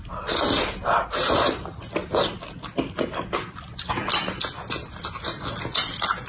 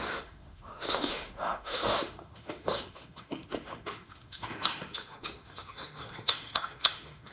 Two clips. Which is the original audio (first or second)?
first